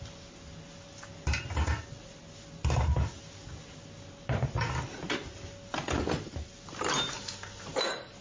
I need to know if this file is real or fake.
real